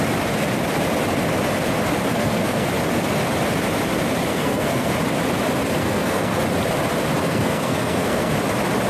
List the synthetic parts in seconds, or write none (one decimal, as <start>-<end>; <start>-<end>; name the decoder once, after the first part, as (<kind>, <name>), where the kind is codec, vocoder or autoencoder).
2.1-2.7 (codec, SNAC); 4.3-4.9; 5.8-6.4; 7.2-8.3

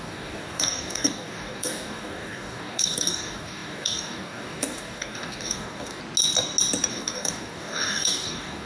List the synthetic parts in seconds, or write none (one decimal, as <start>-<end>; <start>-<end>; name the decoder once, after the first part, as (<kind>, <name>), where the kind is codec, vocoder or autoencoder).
0.0-6.0 (codec, DAC); 6.9-8.7

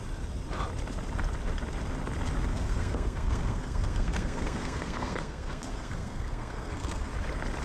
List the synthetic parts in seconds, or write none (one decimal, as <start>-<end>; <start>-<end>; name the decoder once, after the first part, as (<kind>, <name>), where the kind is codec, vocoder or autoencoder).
2.5-7.1 (codec, SNAC)

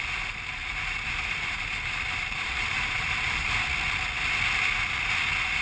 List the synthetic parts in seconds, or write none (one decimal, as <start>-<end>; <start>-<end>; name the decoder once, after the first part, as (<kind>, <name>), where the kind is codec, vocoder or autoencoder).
0.6-3.6 (vocoder, BigVGAN v2)

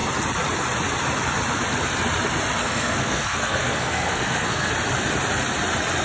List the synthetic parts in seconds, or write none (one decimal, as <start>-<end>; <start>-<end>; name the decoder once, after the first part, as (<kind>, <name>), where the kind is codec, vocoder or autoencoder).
2.6-4.7 (codec, SNAC)

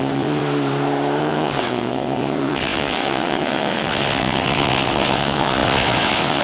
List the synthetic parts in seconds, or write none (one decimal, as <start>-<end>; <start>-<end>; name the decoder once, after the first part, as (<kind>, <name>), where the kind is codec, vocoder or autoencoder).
0.0-0.4 (vocoder, WaveNeXt); 1.2-6.4

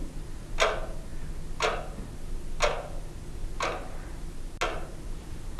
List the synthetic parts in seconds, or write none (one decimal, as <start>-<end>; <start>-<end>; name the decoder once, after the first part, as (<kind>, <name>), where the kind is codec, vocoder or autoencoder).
none

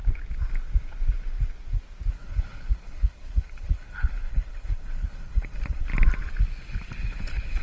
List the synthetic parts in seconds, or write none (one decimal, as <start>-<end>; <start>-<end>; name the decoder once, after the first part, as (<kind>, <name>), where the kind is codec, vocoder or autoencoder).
2.1-5.9 (codec, HILCodec); 7.0-7.6